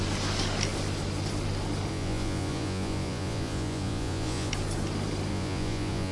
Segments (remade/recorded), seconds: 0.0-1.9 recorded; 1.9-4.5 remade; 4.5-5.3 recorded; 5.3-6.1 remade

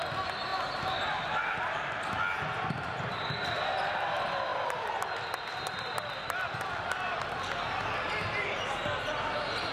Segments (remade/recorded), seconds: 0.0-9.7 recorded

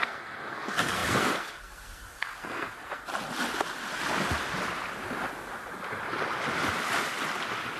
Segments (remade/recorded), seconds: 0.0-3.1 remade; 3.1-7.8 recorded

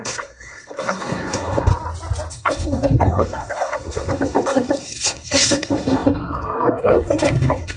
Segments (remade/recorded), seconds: 0.0-1.7 remade; 1.7-2.3 recorded; 2.3-7.8 remade